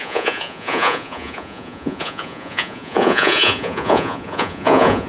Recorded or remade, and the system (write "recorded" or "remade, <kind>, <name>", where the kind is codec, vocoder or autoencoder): remade, vocoder, Vocos